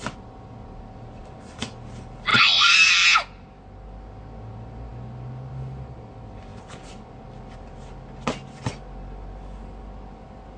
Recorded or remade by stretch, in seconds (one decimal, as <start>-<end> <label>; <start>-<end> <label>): 0.0-2.3 recorded; 2.3-2.9 remade; 2.9-10.6 recorded